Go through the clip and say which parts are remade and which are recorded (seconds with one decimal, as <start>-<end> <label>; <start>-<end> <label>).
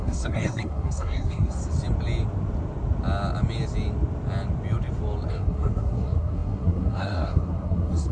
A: 0.0-1.6 remade; 1.6-5.3 recorded; 5.3-8.1 remade